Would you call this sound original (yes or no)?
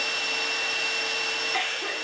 yes